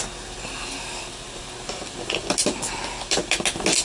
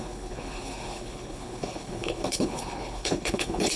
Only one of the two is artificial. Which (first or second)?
second